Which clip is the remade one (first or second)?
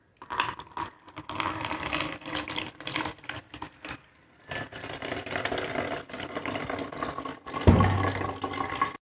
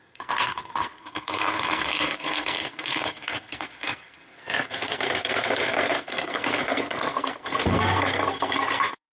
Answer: second